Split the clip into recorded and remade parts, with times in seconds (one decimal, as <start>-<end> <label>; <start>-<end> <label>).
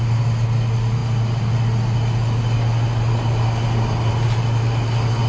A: 0.0-5.3 recorded